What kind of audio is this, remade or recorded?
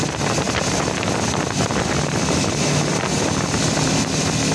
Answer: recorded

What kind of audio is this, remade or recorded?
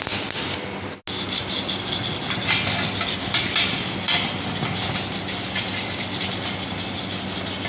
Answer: recorded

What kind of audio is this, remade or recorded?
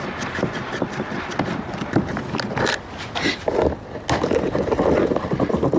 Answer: recorded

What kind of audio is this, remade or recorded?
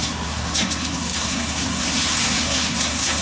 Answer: remade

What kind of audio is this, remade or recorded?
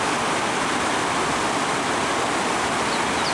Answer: recorded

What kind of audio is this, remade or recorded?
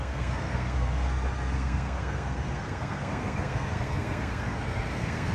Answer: remade